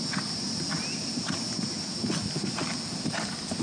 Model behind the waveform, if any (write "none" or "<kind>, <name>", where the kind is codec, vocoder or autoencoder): none